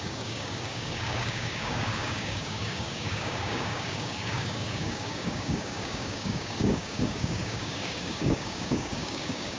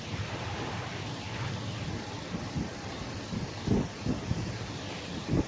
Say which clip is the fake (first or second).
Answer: first